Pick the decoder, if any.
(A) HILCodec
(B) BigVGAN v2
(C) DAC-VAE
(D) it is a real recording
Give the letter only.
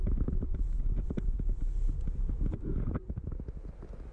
B